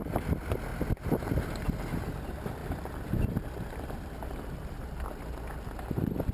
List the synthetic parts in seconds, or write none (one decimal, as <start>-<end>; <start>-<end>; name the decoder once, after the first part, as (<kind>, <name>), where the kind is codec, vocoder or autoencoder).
2.6-5.1 (vocoder, BigVGAN v2)